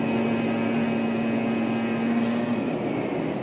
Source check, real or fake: real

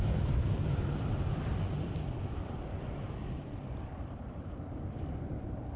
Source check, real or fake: fake